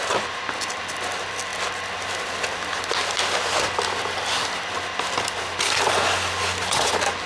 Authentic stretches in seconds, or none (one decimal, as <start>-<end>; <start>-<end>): 0.0-7.3